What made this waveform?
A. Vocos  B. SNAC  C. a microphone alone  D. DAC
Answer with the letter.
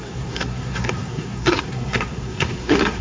B